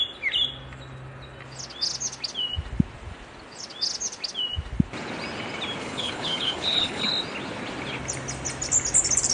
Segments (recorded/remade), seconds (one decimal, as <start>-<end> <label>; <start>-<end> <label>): 0.0-5.8 recorded; 5.8-7.1 remade; 7.1-9.3 recorded